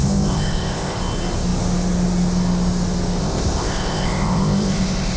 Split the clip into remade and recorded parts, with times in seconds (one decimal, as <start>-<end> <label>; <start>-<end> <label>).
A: 0.0-1.0 remade; 1.0-3.2 recorded; 3.2-5.2 remade